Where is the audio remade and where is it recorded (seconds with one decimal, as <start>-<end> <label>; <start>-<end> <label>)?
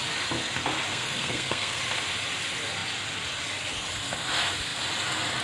0.0-0.9 recorded; 0.9-1.8 remade; 1.8-5.4 recorded